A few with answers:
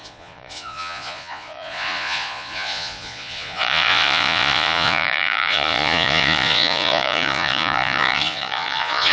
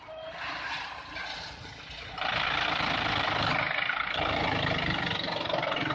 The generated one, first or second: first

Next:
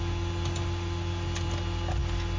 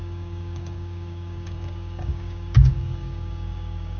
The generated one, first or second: second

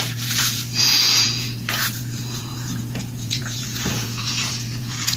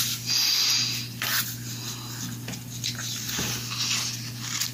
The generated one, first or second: first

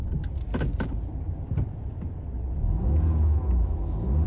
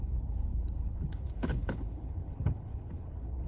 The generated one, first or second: second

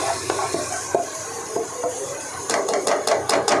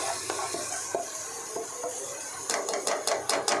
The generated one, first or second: first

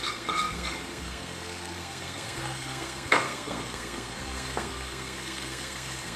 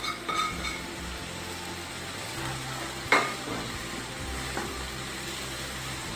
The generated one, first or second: first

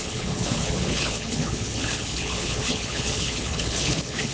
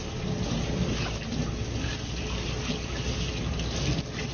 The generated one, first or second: first